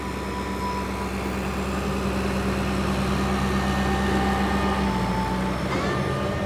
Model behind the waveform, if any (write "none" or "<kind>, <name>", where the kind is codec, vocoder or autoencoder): none